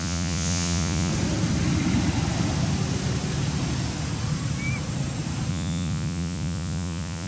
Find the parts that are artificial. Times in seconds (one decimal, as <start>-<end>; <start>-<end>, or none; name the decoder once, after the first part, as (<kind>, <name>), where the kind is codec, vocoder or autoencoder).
0.0-1.1 (vocoder, Vocos); 5.5-7.3